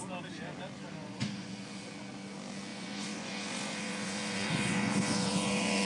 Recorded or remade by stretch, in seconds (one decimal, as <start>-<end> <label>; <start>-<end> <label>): 0.0-1.0 recorded; 1.0-1.9 remade; 1.9-2.7 recorded; 2.7-5.8 remade